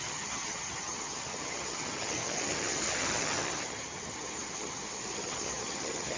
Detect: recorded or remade remade